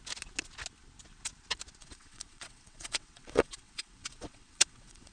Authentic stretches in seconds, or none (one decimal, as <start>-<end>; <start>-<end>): 0.0-1.8